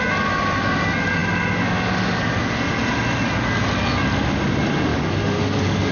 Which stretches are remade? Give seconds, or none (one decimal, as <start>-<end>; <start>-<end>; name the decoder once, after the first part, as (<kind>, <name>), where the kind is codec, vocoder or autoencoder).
4.9-5.9 (codec, DAC)